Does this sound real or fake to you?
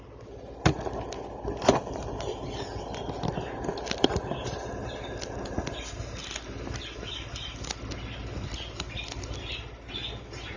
real